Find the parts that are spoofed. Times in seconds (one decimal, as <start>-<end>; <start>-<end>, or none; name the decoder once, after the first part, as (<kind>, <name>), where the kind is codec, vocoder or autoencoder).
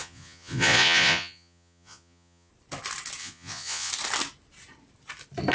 0.0-2.5 (vocoder, Vocos); 3.2-3.9